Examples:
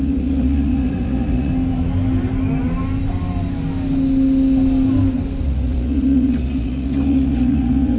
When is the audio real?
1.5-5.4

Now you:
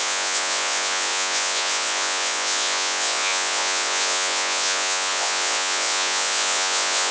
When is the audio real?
none

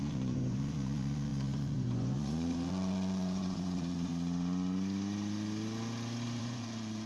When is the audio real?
4.1-6.4

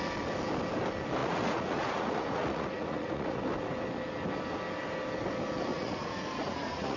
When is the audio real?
0.0-1.2; 3.4-5.7

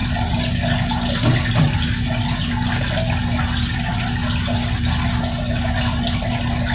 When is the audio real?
0.0-6.7

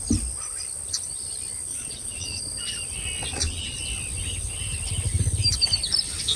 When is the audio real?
0.0-1.7; 2.4-3.3; 3.8-6.4

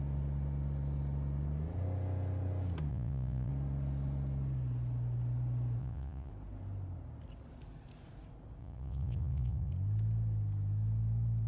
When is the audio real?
0.0-2.9; 3.5-5.8; 6.3-8.6; 9.7-11.5

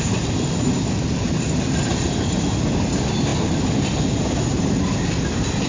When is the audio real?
0.0-5.7